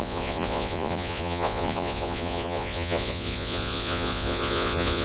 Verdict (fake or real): fake